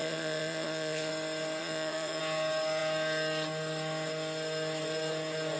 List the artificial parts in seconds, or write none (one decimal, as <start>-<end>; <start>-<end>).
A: 0.0-1.1; 1.6-2.2